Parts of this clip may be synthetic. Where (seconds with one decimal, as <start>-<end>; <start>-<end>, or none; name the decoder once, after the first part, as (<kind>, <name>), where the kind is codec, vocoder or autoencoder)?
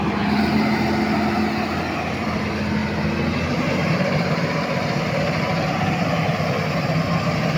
none